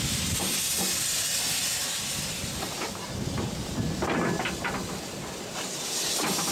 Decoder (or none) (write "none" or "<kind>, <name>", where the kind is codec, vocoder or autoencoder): none